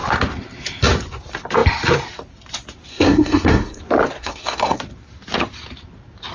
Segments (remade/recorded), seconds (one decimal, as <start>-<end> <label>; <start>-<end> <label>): 0.0-2.9 recorded; 2.9-3.8 remade; 3.8-4.2 recorded; 4.2-4.8 remade; 4.8-6.3 recorded